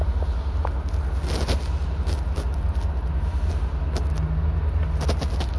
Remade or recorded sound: recorded